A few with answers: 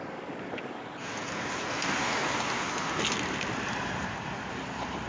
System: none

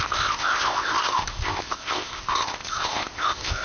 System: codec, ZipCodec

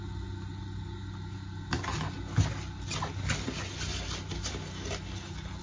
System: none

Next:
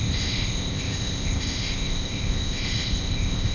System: codec, ZipCodec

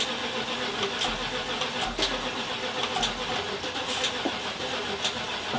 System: none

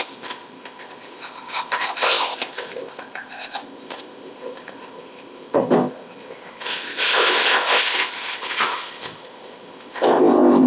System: codec, ZipCodec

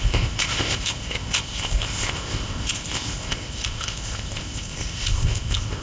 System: codec, ZipCodec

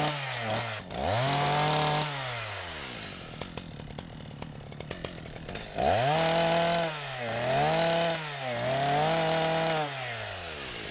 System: none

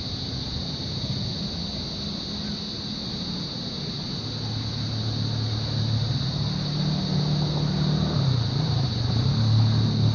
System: none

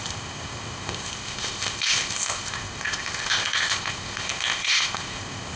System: codec, ZipCodec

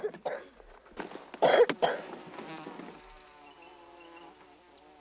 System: none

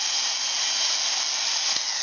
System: none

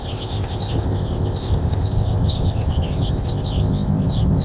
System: codec, ZipCodec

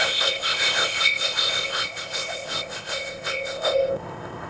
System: codec, ZipCodec